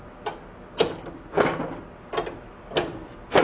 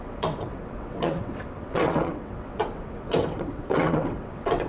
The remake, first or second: second